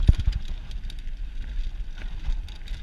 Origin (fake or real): real